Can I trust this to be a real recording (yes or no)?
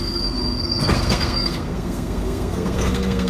no